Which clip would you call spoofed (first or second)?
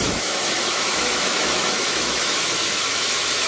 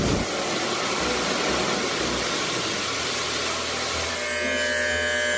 first